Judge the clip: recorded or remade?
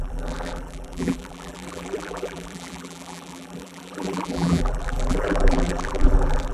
remade